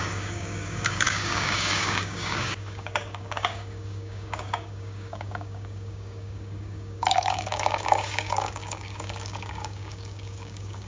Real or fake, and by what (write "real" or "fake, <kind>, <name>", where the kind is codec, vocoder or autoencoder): fake, codec, DAC